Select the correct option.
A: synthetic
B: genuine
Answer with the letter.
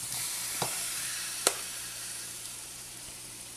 A